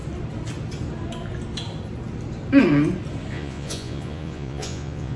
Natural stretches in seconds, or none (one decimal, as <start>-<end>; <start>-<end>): 0.0-3.3